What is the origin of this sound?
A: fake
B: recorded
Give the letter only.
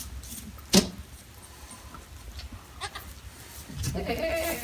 B